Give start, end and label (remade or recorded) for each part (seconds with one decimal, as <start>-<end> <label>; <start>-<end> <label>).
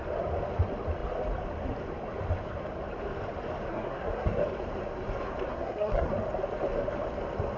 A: 0.0-3.7 recorded; 3.7-4.4 remade; 4.4-5.5 recorded; 5.5-6.1 remade; 6.1-7.6 recorded